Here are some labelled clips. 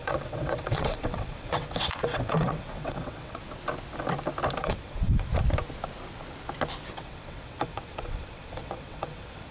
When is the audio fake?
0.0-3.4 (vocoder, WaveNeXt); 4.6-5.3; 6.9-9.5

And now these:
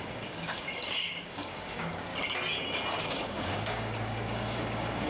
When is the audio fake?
0.0-2.1 (codec, DAC); 3.0-5.1

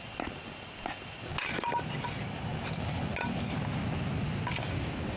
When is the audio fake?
none

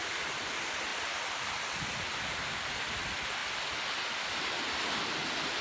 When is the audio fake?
0.9-2.9 (vocoder, BigVGAN v2); 3.4-5.6

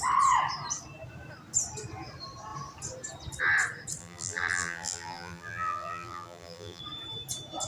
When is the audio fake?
4.0-6.8 (vocoder, BigVGAN v2)